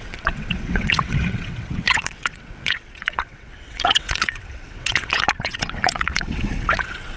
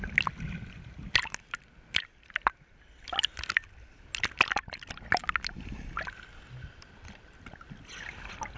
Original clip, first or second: second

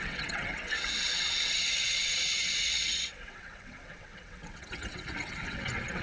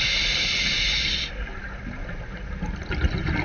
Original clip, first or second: second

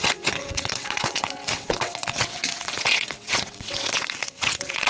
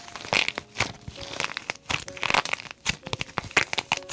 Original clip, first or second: second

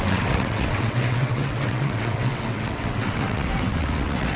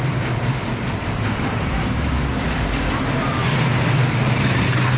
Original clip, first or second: second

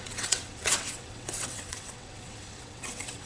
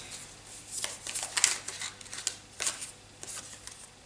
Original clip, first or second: second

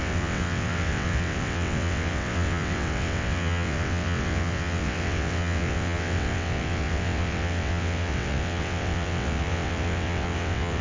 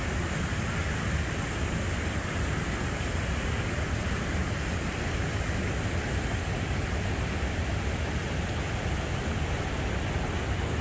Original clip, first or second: second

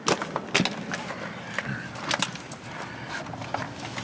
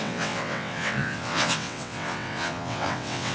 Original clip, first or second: first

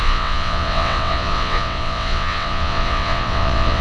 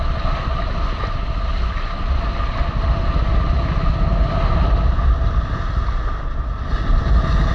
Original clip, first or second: second